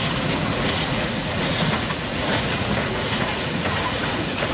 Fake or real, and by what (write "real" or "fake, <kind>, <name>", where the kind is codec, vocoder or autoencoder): fake, vocoder, Vocos